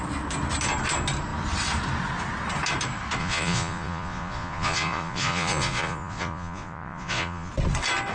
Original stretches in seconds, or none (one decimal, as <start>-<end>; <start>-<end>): 0.0-3.2; 7.5-8.1